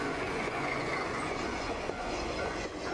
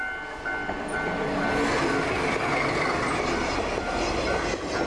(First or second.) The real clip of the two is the second